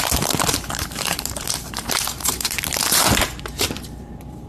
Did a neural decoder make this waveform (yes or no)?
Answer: yes